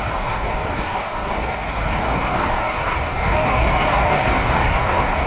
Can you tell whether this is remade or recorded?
remade